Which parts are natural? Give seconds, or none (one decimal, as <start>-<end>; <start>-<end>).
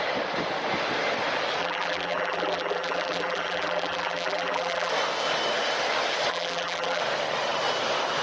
0.0-1.6; 4.9-6.3; 7.0-8.2